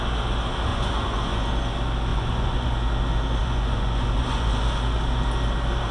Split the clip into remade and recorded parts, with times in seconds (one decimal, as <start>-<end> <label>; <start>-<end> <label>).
0.0-0.7 recorded; 0.7-1.5 remade; 1.5-2.1 recorded; 2.1-2.7 remade; 2.7-3.4 recorded; 3.4-4.6 remade; 4.6-5.9 recorded